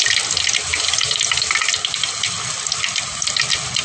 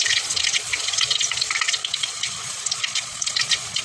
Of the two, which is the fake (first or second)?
second